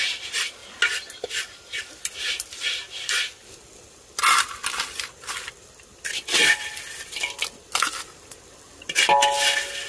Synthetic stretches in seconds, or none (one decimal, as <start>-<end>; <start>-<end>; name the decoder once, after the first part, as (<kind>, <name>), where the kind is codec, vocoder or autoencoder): none